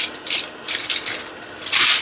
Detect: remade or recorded recorded